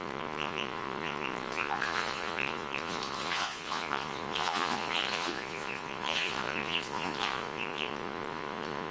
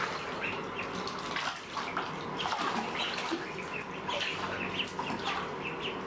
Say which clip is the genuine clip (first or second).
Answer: second